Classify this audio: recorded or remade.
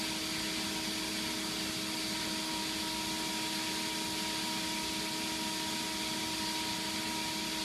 recorded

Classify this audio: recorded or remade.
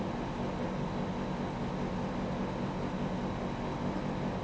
recorded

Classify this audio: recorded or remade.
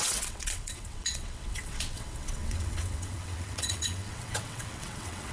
remade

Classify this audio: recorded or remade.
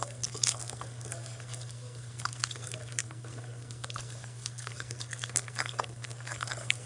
remade